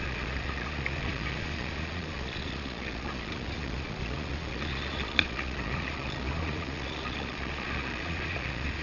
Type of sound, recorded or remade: remade